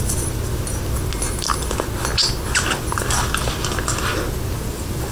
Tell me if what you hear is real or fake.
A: real